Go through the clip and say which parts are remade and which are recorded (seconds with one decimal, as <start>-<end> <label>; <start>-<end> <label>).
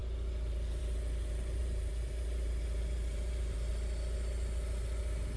0.0-1.6 recorded; 1.6-3.7 remade; 3.7-5.4 recorded